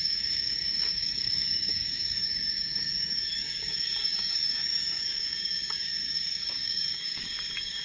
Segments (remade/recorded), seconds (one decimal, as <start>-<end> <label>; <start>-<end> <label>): 0.0-7.8 remade